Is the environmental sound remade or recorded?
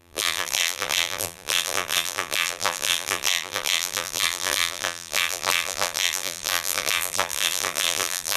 remade